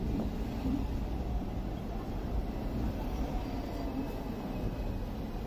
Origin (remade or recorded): recorded